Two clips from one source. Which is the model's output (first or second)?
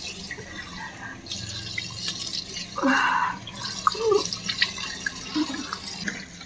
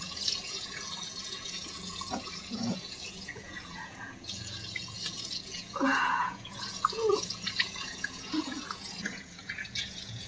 second